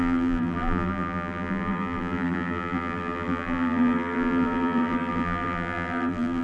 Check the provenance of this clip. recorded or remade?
remade